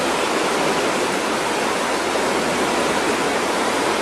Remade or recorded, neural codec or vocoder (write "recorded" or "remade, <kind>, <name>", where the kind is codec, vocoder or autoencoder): recorded